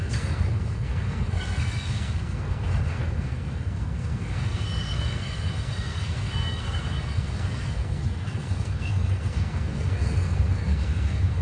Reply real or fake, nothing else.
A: fake